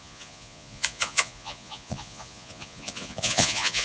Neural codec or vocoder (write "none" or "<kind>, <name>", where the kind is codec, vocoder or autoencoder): vocoder, Vocos